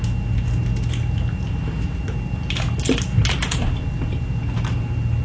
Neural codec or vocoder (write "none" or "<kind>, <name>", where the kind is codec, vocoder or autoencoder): none